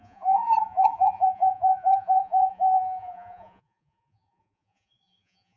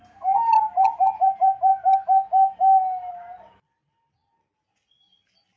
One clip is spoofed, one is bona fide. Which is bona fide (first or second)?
second